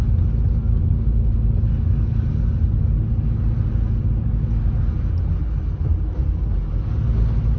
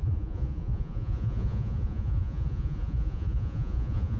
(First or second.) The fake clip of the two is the second